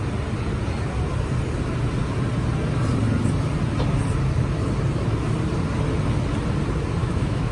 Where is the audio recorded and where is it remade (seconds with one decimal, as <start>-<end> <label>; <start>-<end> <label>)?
0.0-7.0 recorded; 7.0-7.5 remade